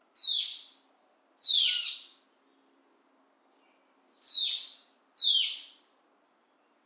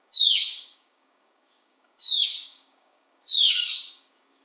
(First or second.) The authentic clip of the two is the first